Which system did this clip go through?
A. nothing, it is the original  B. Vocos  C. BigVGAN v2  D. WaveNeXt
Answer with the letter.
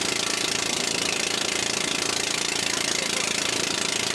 A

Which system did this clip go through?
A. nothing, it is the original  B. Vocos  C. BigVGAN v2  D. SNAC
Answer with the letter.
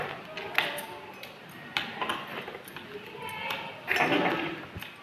A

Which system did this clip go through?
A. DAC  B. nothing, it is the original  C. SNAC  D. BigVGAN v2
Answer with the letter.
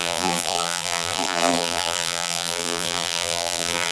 D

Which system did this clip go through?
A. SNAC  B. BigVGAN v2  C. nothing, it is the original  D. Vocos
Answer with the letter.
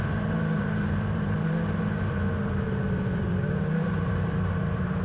B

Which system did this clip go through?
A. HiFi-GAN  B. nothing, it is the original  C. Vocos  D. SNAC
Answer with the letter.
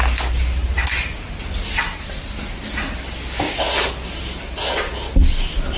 B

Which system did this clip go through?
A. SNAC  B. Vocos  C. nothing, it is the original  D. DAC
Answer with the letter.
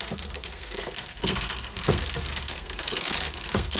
A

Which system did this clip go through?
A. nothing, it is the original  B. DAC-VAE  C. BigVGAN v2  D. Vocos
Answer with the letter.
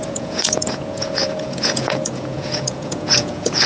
D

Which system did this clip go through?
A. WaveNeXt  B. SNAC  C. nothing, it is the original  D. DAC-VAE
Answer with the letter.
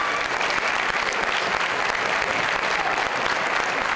C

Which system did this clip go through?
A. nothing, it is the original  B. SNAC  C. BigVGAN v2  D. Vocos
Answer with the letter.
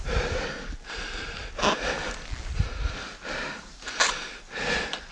A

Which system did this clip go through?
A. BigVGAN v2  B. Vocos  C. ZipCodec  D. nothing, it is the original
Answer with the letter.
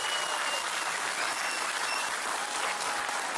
D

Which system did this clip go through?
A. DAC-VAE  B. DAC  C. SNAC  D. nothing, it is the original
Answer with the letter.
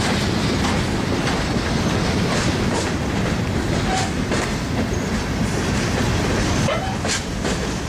D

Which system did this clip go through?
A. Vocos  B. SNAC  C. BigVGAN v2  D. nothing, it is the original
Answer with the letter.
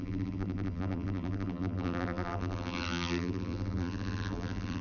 C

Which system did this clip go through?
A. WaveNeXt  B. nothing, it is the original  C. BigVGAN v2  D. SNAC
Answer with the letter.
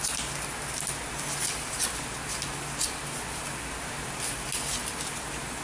B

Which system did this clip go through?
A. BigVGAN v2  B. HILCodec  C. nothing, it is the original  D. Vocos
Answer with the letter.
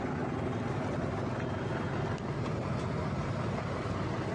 C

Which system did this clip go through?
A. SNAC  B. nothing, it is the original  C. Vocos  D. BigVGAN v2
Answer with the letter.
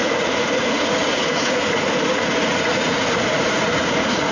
C